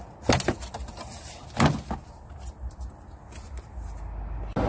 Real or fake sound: real